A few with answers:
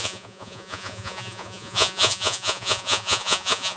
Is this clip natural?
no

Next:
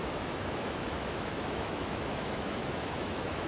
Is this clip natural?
no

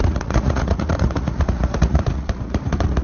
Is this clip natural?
no